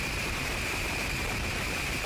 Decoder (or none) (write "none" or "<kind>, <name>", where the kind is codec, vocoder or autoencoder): vocoder, BigVGAN v2